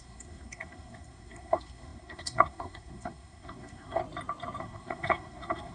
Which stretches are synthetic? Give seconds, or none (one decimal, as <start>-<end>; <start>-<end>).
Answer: 0.0-4.0; 4.6-5.7